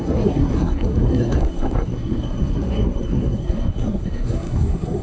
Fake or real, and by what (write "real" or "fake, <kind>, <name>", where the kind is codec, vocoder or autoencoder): fake, codec, SNAC